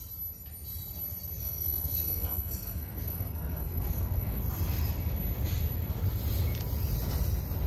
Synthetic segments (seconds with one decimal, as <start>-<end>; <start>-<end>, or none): 1.4-4.4